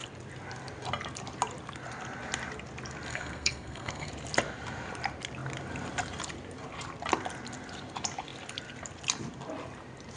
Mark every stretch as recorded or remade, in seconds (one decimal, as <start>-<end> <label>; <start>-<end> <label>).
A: 0.0-3.1 recorded; 3.1-4.1 remade; 4.1-10.2 recorded